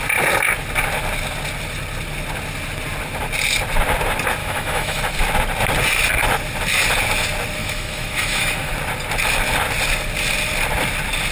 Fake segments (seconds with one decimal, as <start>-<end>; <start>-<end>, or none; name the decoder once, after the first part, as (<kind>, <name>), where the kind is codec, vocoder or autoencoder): 4.4-5.0 (autoencoder, DAC-VAE); 7.6-8.7